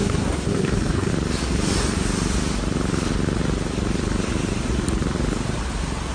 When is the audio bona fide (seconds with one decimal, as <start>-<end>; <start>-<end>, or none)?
1.1-6.1